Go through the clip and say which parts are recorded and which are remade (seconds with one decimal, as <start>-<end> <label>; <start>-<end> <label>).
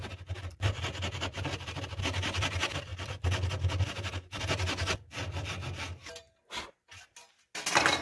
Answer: 0.0-8.0 recorded